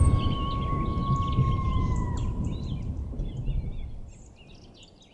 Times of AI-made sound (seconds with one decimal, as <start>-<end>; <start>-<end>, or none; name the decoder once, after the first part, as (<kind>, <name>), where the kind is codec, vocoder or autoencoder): 2.2-3.7 (vocoder, BigVGAN v2)